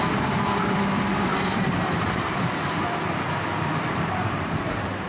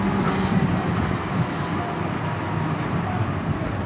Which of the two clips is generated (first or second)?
first